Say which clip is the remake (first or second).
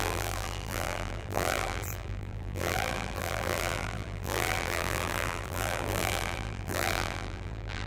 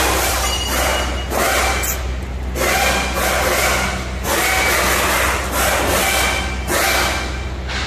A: first